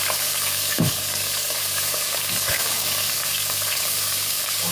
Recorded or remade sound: remade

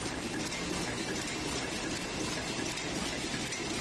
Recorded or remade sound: recorded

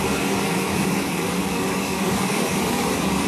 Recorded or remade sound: remade